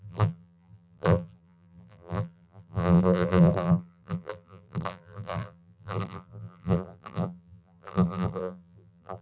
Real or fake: fake